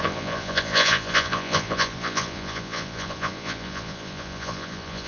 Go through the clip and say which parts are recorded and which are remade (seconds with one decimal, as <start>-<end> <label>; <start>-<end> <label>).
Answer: 0.0-5.1 remade